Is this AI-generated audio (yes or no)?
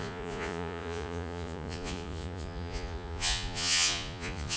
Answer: yes